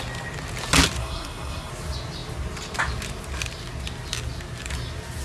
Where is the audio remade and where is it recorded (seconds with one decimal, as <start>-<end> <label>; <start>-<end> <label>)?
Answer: 0.0-1.0 recorded; 1.0-1.7 remade; 1.7-5.2 recorded

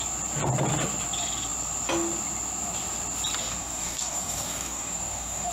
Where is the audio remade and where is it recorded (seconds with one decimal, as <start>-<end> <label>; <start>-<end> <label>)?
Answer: 0.0-3.4 recorded; 3.4-5.5 remade

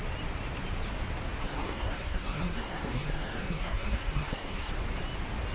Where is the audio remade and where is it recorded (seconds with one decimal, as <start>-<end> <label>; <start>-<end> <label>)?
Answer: 0.0-1.4 recorded; 1.4-4.7 remade; 4.7-5.5 recorded